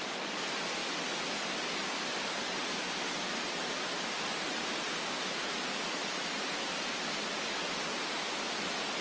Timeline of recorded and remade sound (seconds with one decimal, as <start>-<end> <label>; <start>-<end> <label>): 0.0-9.0 recorded